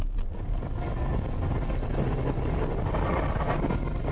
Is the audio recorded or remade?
recorded